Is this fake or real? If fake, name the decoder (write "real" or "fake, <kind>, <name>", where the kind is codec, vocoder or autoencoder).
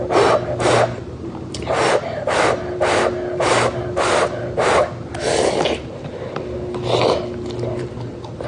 real